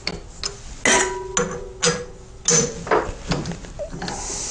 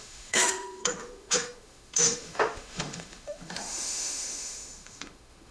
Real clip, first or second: first